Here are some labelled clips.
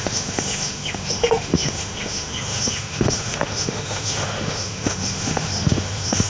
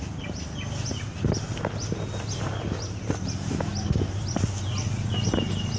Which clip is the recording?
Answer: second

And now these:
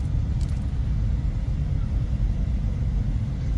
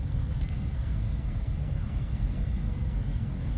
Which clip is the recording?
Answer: first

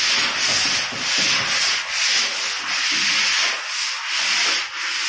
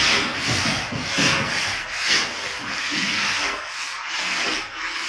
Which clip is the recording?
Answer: first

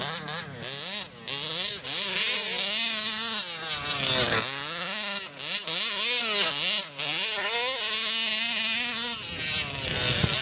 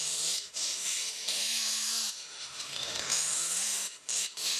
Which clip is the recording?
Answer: first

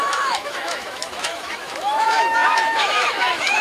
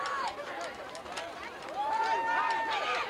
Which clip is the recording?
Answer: second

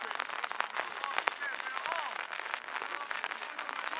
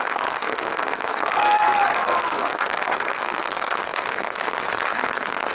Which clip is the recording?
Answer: first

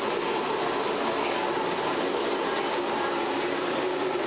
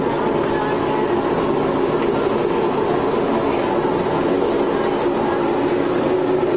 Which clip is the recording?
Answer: second